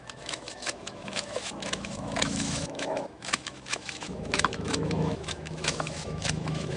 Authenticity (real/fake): fake